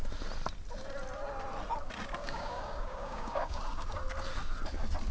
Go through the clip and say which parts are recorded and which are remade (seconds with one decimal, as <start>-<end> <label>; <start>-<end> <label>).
0.0-2.2 recorded; 2.2-3.6 remade; 3.6-5.1 recorded